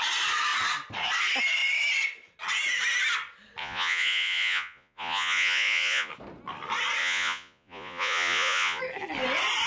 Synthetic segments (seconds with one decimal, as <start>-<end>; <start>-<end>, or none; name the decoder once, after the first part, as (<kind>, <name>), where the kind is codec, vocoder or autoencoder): 3.6-6.1 (vocoder, Vocos); 7.0-8.8